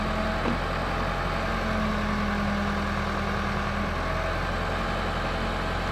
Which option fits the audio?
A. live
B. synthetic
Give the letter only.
A